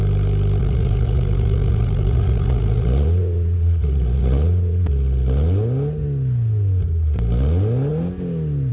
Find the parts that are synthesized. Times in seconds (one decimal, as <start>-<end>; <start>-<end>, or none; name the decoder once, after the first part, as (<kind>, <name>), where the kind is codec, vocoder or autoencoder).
0.6-4.9 (vocoder, Vocos)